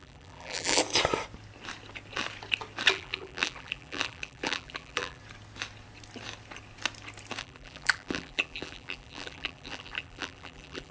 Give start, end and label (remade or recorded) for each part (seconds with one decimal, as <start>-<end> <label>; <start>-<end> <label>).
0.0-0.8 remade; 0.8-2.9 recorded; 2.9-5.2 remade; 5.2-7.4 recorded; 7.4-10.9 remade